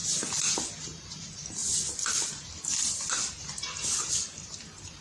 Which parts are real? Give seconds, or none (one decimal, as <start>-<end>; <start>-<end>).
0.0-5.0

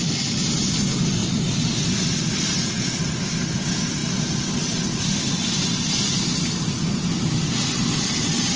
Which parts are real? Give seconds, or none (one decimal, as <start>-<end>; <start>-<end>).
0.0-8.6

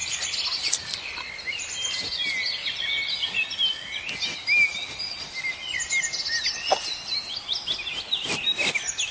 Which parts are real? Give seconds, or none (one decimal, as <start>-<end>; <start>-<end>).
0.0-9.1

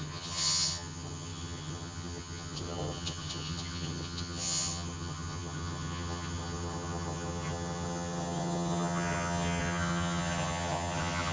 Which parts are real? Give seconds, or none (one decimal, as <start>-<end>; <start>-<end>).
none

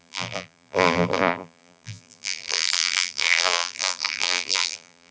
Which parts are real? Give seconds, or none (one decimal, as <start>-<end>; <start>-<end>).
none

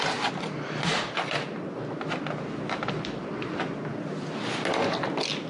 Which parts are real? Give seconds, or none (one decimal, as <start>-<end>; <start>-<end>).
0.0-5.5

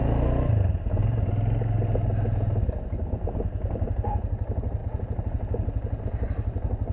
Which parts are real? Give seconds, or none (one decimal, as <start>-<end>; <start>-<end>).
0.0-6.9

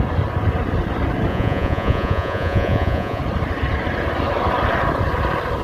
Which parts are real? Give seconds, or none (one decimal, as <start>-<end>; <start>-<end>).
0.0-1.3; 3.2-5.6